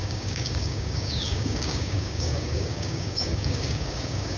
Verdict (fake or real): fake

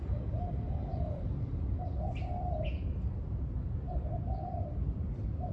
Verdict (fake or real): real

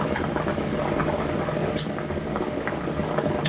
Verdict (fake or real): fake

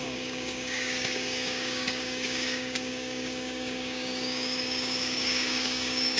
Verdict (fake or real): fake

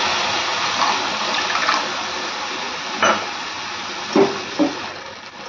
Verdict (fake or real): real